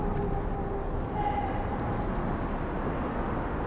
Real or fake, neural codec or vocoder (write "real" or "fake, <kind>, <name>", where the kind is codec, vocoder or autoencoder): real